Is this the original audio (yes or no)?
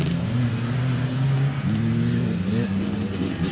yes